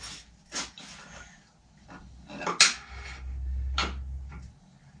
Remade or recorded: recorded